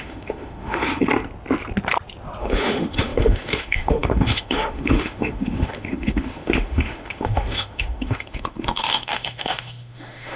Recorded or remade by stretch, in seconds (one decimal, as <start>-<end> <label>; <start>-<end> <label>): 0.0-1.1 remade; 1.1-2.4 recorded; 2.4-10.4 remade